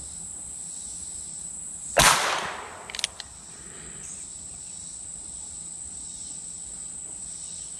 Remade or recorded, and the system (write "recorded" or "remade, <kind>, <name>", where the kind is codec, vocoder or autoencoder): recorded